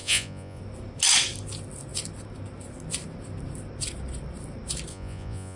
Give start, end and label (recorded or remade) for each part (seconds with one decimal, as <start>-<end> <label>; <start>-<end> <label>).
0.0-0.6 remade; 0.6-4.9 recorded; 4.9-5.6 remade